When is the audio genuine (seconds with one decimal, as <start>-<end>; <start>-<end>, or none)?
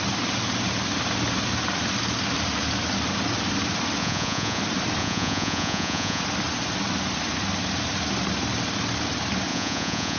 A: 0.0-4.0; 4.6-5.0; 6.2-9.5